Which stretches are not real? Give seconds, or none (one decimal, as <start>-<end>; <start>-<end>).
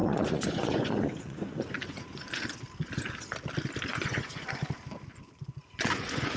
0.0-2.4; 3.9-4.6; 5.6-6.4